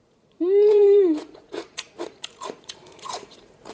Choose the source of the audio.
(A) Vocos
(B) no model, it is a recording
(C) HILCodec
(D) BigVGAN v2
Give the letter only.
A